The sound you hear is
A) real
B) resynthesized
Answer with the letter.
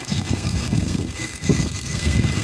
B